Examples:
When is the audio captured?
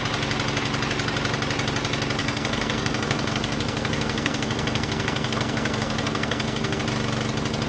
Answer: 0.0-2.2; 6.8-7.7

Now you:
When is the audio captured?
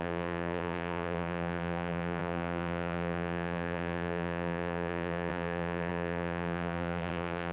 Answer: none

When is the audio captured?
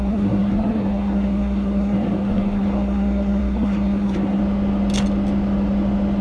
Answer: 4.4-6.2